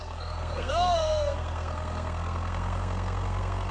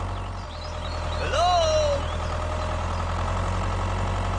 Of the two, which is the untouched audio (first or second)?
second